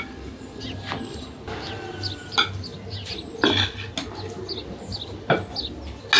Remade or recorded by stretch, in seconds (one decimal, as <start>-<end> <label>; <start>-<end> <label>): 0.0-6.2 recorded